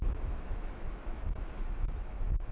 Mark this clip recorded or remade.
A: remade